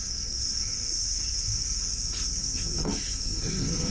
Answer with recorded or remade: remade